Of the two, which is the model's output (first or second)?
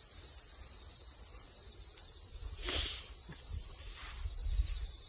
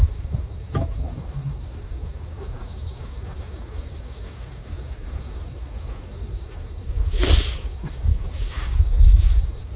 second